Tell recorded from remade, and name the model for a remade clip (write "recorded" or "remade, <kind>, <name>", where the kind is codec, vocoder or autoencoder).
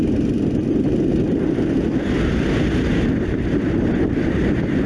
recorded